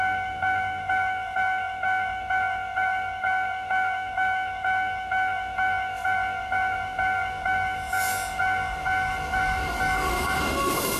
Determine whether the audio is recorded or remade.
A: remade